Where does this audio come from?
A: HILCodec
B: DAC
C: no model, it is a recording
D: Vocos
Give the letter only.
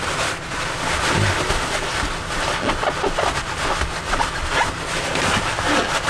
C